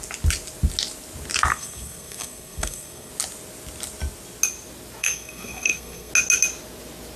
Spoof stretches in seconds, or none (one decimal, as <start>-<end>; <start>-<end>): 1.5-3.1; 5.0-6.1